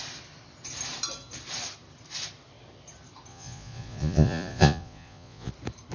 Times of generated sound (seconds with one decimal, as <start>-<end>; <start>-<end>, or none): 3.3-5.5